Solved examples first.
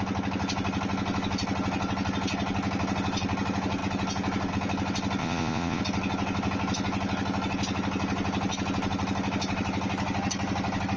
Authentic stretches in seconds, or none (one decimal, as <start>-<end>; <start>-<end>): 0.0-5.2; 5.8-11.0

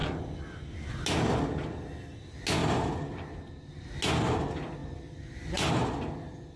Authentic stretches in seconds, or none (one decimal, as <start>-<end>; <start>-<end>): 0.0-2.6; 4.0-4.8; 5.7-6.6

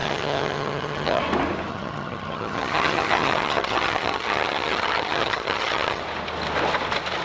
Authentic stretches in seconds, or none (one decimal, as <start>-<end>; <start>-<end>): 1.2-1.7; 6.0-7.2